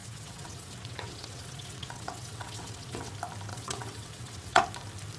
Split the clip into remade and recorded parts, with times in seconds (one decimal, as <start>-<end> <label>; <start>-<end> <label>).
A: 0.0-3.1 remade; 3.1-3.5 recorded; 3.5-4.6 remade; 4.6-5.2 recorded